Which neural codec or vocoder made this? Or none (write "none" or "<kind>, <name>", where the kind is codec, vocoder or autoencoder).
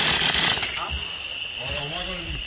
none